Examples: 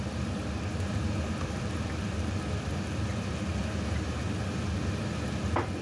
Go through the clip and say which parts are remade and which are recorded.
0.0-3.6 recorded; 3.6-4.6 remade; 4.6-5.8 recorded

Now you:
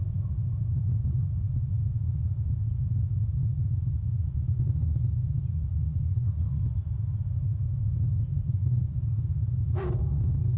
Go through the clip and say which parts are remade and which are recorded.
0.0-4.2 recorded; 4.2-6.6 remade; 6.6-8.3 recorded; 8.3-9.0 remade; 9.0-10.6 recorded

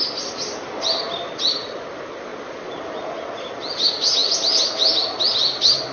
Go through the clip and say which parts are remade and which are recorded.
0.0-5.9 recorded